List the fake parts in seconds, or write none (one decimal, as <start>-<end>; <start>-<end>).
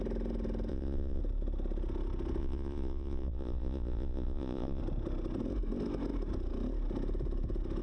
0.7-1.2; 2.4-4.8